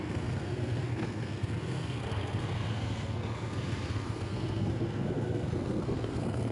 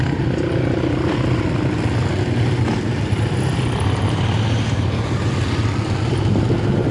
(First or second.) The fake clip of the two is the first